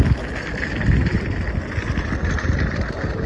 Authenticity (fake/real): real